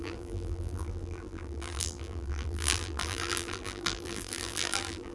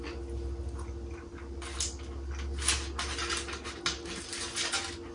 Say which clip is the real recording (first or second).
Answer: second